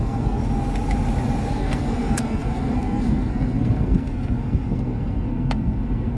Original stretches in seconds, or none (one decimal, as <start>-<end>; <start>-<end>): 0.4-1.5